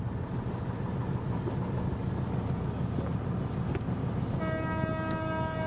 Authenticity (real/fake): real